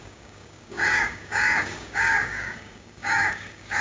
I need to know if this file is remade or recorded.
remade